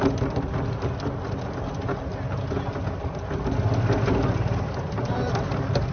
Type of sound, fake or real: real